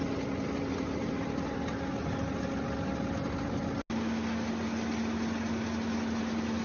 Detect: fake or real real